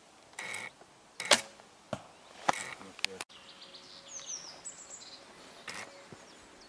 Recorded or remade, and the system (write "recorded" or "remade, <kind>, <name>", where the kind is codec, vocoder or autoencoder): recorded